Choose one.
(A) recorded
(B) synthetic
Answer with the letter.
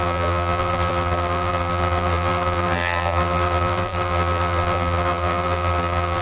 B